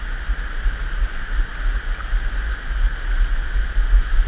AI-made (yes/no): no